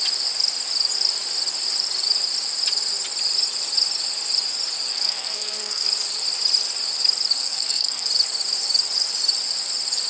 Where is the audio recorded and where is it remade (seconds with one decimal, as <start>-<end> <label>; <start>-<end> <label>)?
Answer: 0.0-4.9 recorded; 4.9-5.8 remade; 5.8-7.4 recorded; 7.4-8.1 remade; 8.1-10.1 recorded